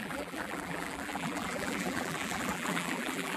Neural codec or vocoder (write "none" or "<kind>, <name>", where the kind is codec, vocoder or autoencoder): vocoder, BigVGAN v2